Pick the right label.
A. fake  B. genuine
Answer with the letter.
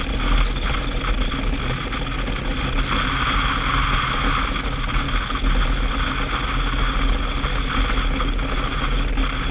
B